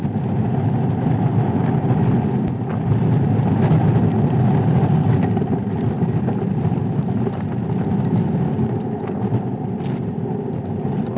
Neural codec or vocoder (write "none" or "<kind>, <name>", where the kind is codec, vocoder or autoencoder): none